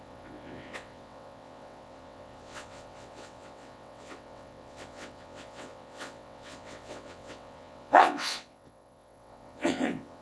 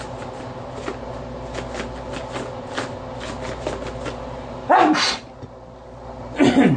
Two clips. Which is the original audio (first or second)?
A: second